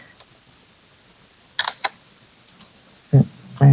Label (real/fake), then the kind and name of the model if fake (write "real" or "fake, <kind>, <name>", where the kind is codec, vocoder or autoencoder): real